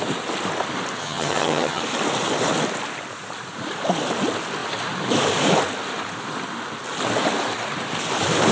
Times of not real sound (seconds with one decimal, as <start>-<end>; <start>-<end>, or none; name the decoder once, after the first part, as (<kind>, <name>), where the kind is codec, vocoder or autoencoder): 1.0-1.8 (vocoder, HiFi-GAN)